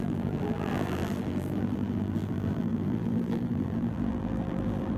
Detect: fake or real fake